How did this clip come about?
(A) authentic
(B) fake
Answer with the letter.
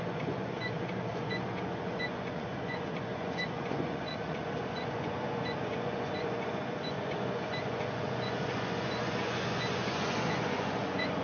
B